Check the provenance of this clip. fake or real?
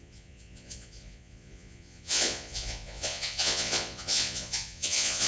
fake